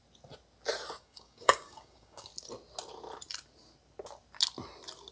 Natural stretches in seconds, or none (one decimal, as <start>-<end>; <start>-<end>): 0.0-1.0; 2.3-5.1